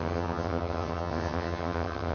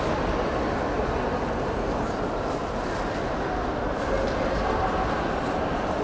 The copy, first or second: first